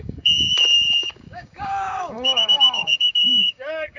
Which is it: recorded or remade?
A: remade